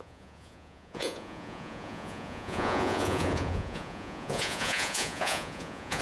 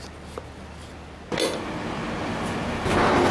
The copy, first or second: first